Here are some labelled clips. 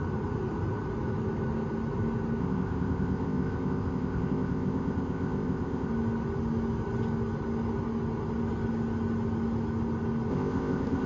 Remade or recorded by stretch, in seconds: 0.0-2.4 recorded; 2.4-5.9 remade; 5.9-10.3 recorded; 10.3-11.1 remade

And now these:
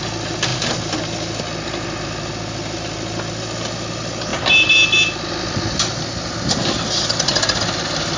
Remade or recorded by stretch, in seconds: 0.0-8.2 recorded

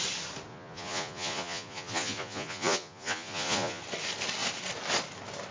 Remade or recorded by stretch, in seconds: 0.0-0.5 recorded; 0.5-3.8 remade; 3.8-5.5 recorded

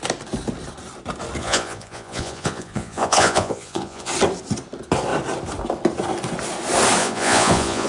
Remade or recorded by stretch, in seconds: 0.0-1.4 recorded; 1.4-4.1 remade; 4.1-7.0 recorded; 7.0-7.9 remade